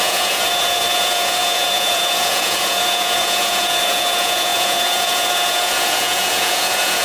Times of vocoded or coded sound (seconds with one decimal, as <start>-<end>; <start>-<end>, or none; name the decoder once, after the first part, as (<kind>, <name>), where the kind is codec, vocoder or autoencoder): 0.0-7.0 (vocoder, Vocos)